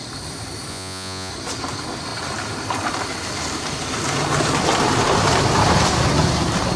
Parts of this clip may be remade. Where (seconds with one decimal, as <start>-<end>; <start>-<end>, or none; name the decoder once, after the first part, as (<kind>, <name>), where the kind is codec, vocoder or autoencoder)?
0.7-1.3 (vocoder, Vocos)